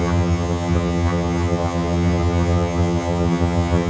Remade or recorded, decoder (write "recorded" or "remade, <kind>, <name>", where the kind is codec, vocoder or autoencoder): remade, vocoder, HiFi-GAN